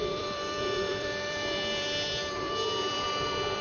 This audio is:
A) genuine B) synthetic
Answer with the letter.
B